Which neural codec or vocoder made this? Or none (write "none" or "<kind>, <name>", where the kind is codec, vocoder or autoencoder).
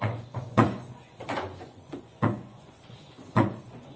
vocoder, Vocos